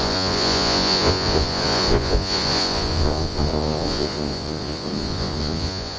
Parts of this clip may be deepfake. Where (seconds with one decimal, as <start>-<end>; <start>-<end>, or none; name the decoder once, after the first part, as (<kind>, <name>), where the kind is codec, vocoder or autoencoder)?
0.0-6.0 (vocoder, Vocos)

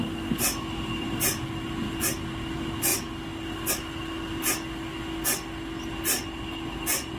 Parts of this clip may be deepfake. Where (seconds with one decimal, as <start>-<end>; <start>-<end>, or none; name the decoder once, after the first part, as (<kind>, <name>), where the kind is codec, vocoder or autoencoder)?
none

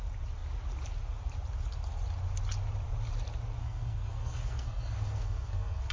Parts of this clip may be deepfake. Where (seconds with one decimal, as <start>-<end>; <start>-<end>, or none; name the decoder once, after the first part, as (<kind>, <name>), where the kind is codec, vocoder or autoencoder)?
3.6-5.9 (codec, SNAC)

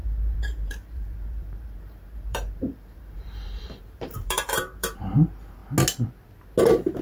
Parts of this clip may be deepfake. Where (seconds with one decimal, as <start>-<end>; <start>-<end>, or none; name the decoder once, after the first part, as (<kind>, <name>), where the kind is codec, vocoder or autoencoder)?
0.0-5.6 (vocoder, BigVGAN v2); 6.6-7.0

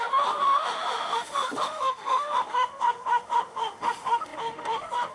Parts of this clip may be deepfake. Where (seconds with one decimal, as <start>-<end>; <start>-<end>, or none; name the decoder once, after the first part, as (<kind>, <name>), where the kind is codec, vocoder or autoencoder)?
0.0-5.1 (autoencoder, DAC-VAE)

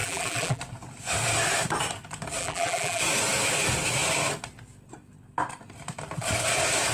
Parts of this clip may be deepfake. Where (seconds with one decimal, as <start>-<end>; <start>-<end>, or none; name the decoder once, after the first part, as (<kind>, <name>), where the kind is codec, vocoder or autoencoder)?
0.0-0.6 (vocoder, BigVGAN v2); 2.4-3.0

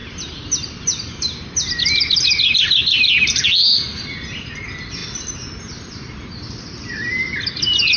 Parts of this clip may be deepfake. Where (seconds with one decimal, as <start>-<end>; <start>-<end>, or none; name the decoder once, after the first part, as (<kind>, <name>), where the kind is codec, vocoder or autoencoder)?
none